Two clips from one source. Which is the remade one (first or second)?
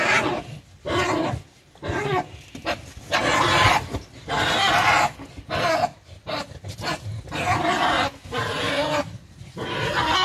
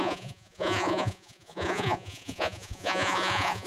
second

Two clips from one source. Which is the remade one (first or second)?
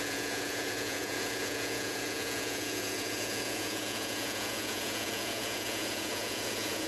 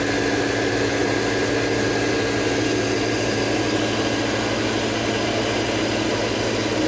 first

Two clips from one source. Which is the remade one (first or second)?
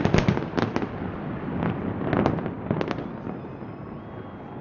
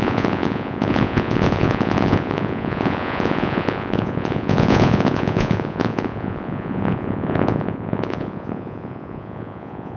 second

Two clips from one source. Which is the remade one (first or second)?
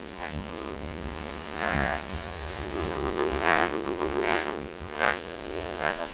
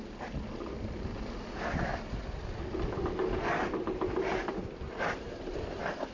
first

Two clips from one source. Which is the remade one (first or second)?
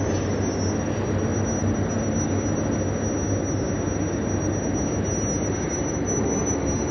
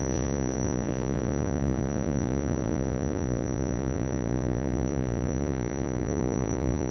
second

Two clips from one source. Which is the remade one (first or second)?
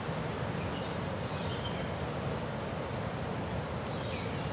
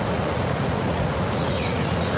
second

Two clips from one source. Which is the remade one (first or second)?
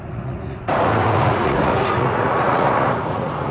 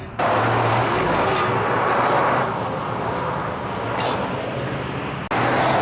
first